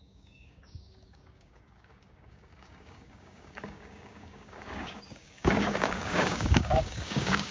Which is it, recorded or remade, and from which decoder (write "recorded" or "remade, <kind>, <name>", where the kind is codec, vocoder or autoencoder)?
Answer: remade, codec, DAC